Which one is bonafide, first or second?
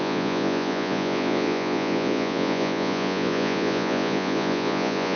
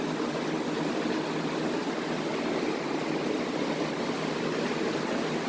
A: second